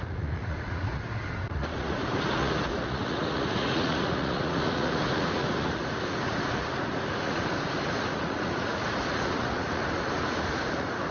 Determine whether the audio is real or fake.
fake